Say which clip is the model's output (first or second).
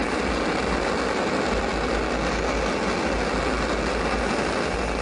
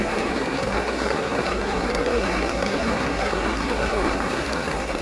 second